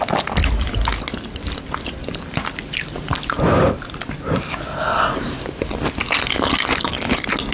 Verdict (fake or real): real